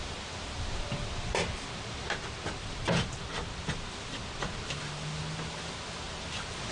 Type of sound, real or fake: real